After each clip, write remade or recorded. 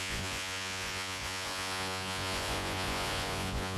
remade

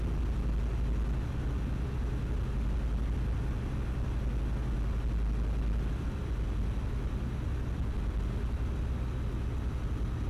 recorded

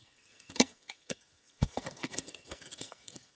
remade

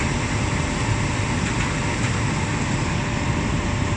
recorded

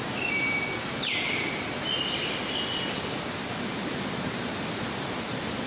recorded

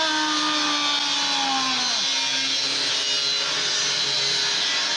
recorded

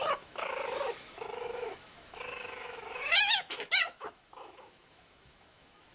remade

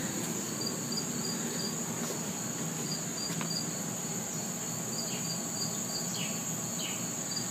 recorded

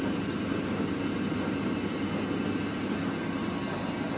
recorded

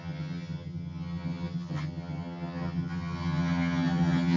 remade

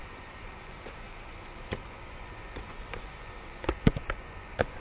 remade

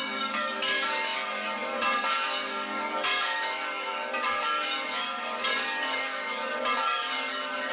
remade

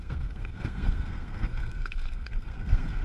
remade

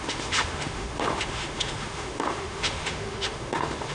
remade